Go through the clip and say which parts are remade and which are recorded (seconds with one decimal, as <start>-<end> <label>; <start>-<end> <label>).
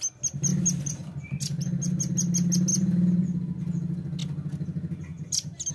0.0-5.7 recorded